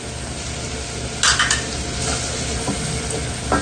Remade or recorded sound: recorded